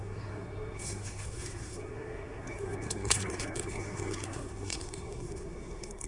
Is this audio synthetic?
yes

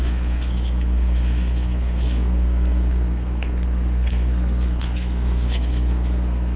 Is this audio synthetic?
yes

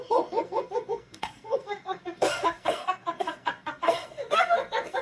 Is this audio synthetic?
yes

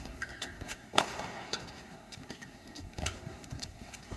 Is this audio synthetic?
yes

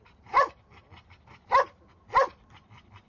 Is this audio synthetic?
no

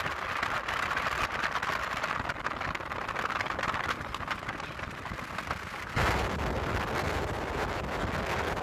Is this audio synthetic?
no